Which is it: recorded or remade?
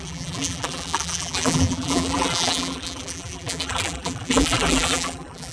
remade